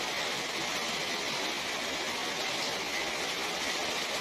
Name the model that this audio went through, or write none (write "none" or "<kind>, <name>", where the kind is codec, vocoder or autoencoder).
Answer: none